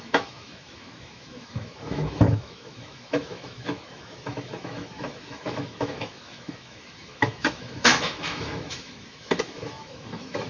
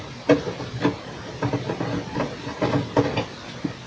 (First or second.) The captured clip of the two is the second